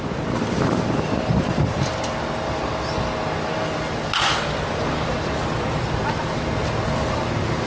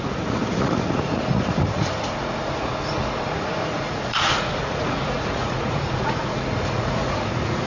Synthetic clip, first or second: second